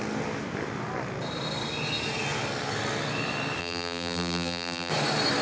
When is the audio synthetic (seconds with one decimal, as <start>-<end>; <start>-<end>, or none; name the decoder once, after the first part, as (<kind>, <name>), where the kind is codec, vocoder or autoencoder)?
3.6-4.9 (vocoder, BigVGAN v2)